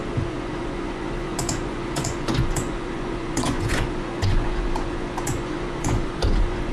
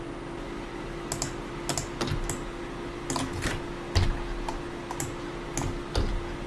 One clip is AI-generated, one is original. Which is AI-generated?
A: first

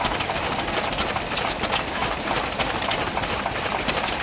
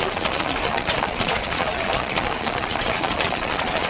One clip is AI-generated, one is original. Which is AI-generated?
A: second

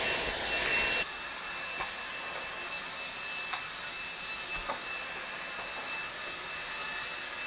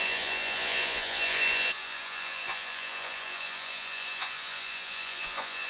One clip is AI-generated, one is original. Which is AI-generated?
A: second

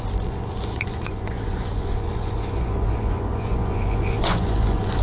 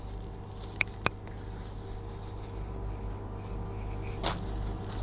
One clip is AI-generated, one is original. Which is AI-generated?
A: first